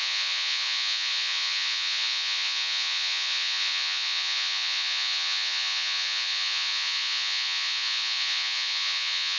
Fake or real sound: fake